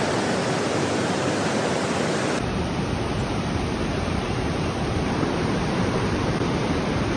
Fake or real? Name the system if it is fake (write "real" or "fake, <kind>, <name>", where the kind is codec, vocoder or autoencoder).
fake, vocoder, BigVGAN v2